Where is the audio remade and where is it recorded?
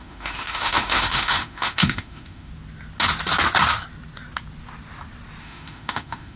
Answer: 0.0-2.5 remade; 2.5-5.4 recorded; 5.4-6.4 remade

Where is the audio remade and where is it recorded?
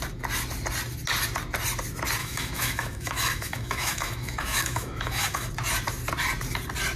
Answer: 0.0-2.2 recorded; 2.2-5.5 remade; 5.5-7.0 recorded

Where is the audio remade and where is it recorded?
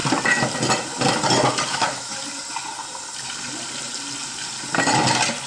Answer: 0.0-1.7 recorded; 1.7-2.1 remade; 2.1-5.5 recorded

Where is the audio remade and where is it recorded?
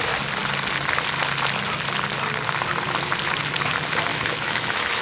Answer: 0.0-4.1 recorded; 4.1-5.0 remade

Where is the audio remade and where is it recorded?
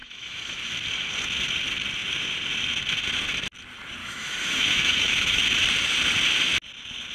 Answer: 0.0-0.7 remade; 0.7-4.0 recorded; 4.0-5.4 remade; 5.4-7.1 recorded